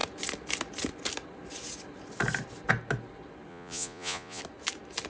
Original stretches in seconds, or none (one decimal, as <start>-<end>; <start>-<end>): 0.0-3.5; 4.4-5.1